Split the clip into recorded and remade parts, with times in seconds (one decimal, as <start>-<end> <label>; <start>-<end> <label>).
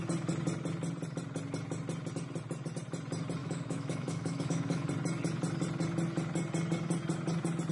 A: 0.0-3.4 recorded; 3.4-4.9 remade; 4.9-7.7 recorded